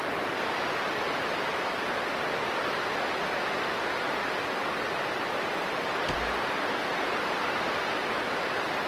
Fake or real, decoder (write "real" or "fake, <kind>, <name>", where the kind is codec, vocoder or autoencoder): real